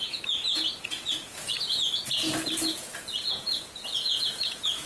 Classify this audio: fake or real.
fake